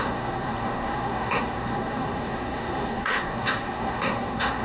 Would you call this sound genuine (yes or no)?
no